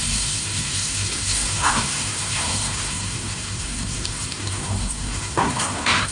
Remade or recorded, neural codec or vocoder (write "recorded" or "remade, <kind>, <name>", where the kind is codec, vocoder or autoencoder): remade, codec, SNAC